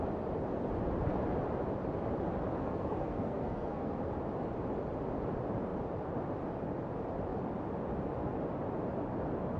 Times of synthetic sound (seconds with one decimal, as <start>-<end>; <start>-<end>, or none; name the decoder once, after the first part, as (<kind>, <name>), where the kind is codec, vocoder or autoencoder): 2.6-4.1 (codec, SNAC)